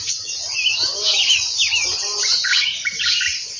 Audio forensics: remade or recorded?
recorded